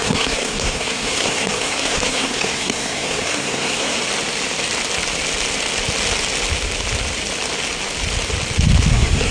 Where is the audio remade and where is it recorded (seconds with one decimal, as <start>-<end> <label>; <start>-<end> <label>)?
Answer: 0.0-4.0 remade; 4.0-8.9 recorded; 8.9-9.3 remade